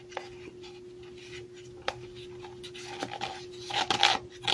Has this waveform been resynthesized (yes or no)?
no